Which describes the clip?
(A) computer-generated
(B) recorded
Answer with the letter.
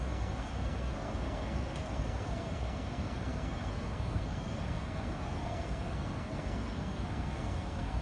A